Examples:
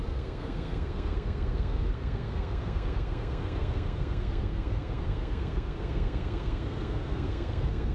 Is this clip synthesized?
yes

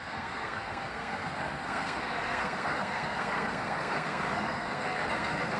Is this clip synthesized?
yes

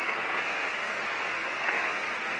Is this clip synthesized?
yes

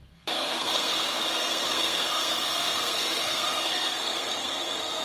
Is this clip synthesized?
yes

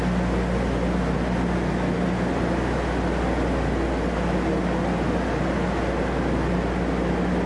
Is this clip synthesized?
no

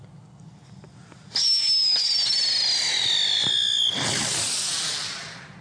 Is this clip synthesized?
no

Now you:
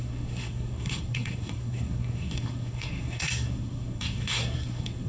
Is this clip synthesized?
yes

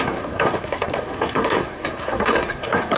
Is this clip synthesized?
yes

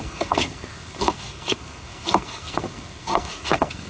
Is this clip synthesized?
yes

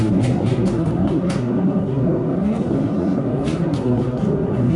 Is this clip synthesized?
yes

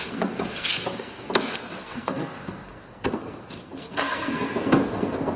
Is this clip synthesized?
yes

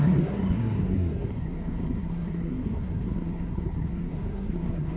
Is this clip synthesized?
yes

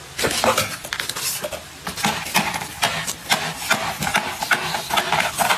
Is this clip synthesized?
no